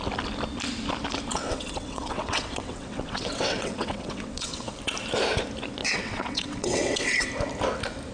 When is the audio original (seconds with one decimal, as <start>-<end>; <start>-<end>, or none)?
0.0-1.3; 4.7-5.8; 7.3-8.1